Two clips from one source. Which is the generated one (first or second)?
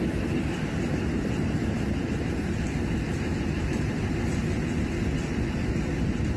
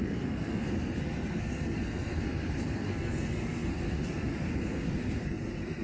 second